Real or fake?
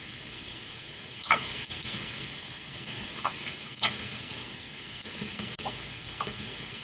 fake